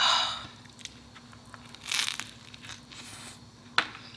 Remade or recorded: recorded